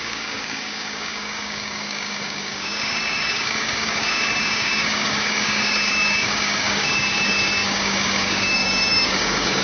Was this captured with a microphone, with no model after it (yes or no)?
no